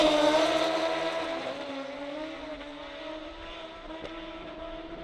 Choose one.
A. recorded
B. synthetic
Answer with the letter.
B